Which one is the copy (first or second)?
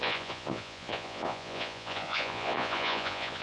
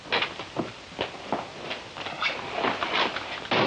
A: first